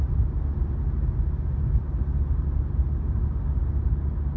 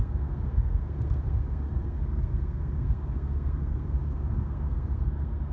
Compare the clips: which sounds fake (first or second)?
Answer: second